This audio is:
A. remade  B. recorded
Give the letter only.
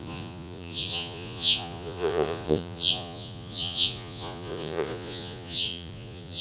A